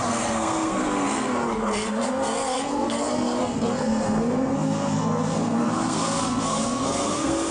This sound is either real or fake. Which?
fake